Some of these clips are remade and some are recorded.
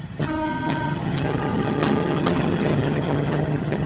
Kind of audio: remade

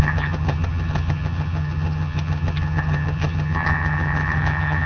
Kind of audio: remade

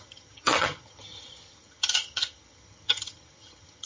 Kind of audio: remade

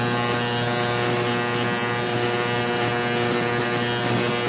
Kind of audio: recorded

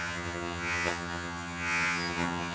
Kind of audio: remade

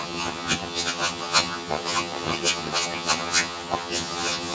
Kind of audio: remade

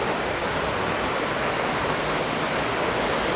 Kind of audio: recorded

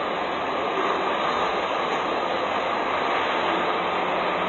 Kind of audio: recorded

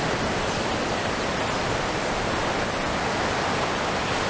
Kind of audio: recorded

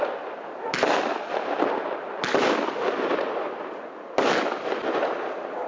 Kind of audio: recorded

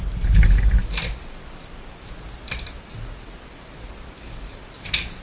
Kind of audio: recorded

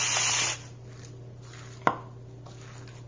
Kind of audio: recorded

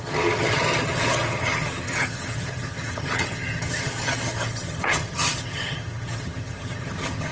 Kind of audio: remade